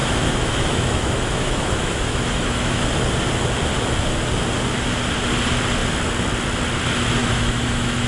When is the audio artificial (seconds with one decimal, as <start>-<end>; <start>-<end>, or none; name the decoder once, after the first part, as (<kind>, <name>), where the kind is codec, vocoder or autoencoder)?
0.0-2.8 (autoencoder, DAC-VAE); 7.2-8.1